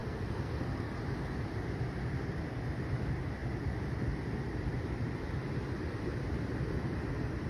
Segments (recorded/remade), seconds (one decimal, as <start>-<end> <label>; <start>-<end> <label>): 0.0-0.9 remade; 0.9-7.5 recorded